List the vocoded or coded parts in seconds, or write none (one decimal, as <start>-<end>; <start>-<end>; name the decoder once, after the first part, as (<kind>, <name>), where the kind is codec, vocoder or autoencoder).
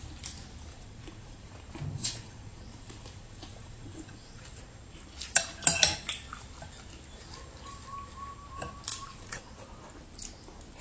0.7-1.5 (vocoder, Vocos); 2.0-4.4; 8.9-9.5